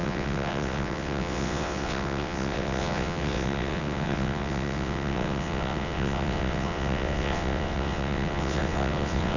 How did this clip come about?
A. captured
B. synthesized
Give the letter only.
B